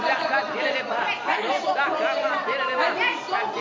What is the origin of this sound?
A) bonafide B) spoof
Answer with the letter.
A